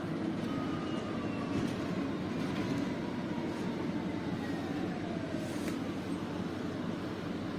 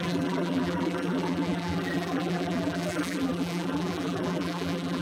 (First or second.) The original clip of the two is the first